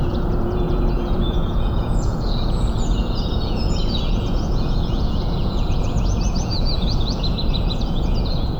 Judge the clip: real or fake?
fake